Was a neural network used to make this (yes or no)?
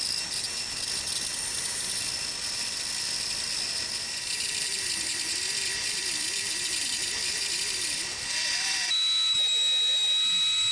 no